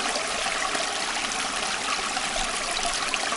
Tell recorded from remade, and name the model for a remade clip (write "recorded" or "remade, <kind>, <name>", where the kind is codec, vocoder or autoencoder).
recorded